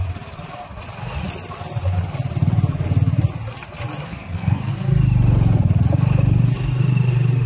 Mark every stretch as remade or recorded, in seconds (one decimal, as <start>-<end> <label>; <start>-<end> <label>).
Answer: 0.0-4.1 recorded; 4.1-4.7 remade; 4.7-7.5 recorded